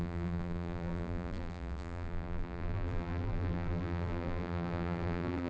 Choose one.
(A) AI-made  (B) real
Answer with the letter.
A